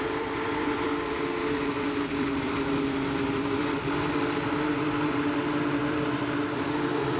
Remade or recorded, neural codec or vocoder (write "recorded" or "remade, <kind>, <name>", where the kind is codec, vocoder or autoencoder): remade, vocoder, BigVGAN v2